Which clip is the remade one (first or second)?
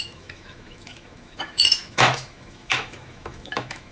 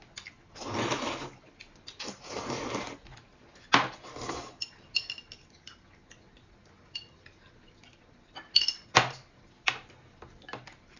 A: first